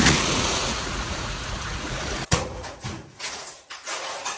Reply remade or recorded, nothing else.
remade